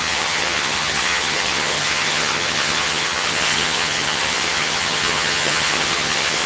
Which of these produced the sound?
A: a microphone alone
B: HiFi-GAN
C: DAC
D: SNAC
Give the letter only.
B